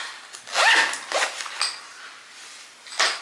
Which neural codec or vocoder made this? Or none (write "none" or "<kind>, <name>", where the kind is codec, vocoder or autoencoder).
none